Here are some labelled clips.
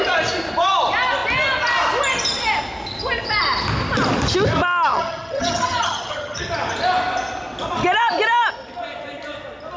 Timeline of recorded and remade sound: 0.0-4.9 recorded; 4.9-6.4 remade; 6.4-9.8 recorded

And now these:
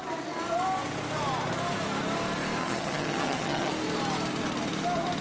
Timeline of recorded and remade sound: 0.0-2.6 recorded; 2.6-3.7 remade; 3.7-5.2 recorded

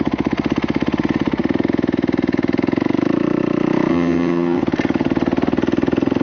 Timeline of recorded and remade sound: 0.0-3.9 recorded; 3.9-4.6 remade; 4.6-6.2 recorded

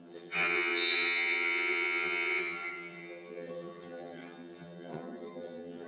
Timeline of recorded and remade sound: 0.0-5.9 remade